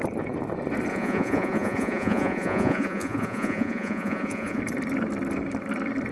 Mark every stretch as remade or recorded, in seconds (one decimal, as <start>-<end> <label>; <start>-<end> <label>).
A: 0.0-0.9 recorded; 0.9-4.6 remade; 4.6-6.1 recorded